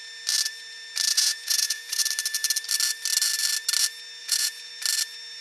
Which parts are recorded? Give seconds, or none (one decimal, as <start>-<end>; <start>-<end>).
0.0-1.1; 2.0-4.2; 4.7-5.4